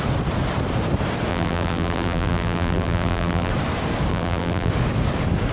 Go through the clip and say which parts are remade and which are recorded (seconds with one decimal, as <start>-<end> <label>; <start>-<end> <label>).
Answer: 0.0-1.3 recorded; 1.3-3.5 remade; 3.5-4.1 recorded; 4.1-4.7 remade; 4.7-5.5 recorded